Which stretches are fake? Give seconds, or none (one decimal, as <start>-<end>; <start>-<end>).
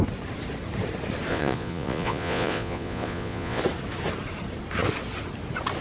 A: 1.3-3.6